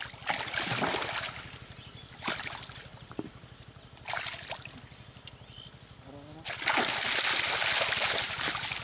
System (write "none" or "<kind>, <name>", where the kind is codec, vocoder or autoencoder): none